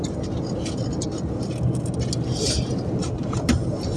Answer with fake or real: real